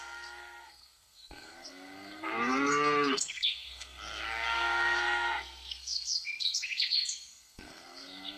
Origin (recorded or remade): remade